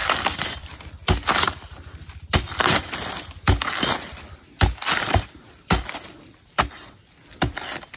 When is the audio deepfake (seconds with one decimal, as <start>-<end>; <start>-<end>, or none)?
0.0-0.8

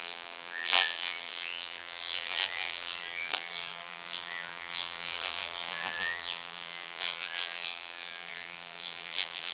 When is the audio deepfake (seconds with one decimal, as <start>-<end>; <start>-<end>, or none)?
0.0-9.5

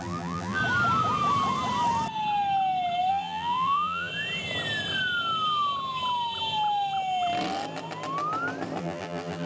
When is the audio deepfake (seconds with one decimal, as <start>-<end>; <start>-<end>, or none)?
0.0-0.6; 3.1-4.1; 8.8-9.5

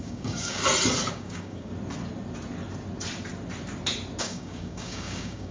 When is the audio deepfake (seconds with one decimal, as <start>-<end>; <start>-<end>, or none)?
0.0-0.6; 1.1-1.7; 4.2-5.5

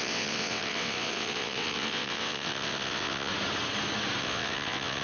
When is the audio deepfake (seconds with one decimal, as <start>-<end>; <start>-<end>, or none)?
0.0-3.3; 4.2-5.0

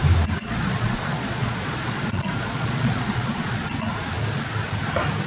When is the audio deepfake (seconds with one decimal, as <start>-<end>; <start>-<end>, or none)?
0.4-3.6

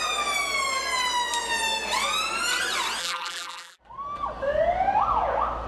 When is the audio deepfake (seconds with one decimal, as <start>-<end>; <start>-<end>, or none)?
3.0-3.8